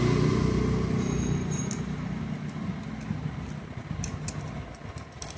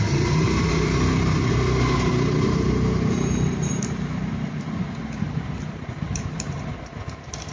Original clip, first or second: first